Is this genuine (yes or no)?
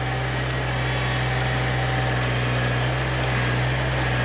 yes